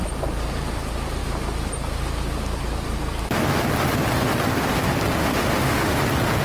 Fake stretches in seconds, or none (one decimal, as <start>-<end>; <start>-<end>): 5.2-6.0